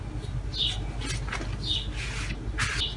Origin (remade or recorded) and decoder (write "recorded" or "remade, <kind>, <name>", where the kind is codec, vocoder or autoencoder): recorded